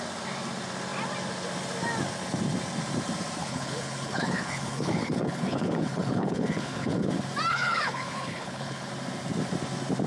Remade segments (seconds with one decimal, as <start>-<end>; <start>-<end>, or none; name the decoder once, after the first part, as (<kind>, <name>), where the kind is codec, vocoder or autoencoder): 3.4-7.1 (codec, HILCodec); 7.5-8.9